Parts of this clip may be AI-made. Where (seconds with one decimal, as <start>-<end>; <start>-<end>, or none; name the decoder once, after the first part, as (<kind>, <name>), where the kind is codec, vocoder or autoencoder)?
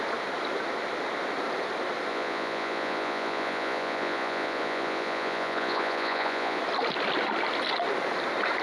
2.1-6.6 (vocoder, Vocos)